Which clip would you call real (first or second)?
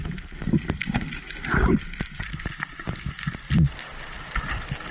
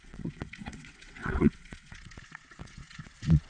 first